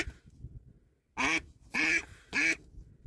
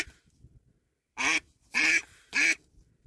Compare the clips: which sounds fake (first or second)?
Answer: second